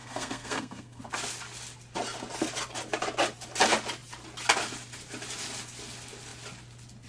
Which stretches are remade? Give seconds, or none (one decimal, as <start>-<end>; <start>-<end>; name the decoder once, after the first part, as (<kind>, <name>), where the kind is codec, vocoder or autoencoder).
0.0-1.0 (codec, SNAC)